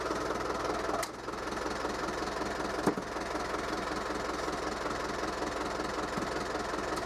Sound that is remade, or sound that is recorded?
recorded